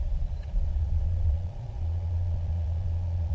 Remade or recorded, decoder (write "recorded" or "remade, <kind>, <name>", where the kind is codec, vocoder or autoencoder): remade, vocoder, Vocos